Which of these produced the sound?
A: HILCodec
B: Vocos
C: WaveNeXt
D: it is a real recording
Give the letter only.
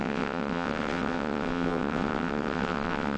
C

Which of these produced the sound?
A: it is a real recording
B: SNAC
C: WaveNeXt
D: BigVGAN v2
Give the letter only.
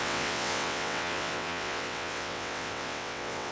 C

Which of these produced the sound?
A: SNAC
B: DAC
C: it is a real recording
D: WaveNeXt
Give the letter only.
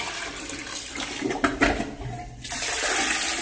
C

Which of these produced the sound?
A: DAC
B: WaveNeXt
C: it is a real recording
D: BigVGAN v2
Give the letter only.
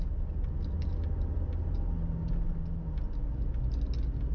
C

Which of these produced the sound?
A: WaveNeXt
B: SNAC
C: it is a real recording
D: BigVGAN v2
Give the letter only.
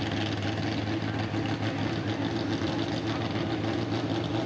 C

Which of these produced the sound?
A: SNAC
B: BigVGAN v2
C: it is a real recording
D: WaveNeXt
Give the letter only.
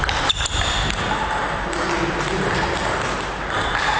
C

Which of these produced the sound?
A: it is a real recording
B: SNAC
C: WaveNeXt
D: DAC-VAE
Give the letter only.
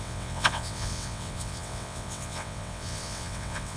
C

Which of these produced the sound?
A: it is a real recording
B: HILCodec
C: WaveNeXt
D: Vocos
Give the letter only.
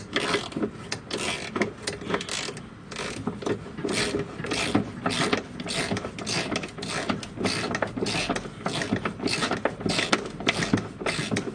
A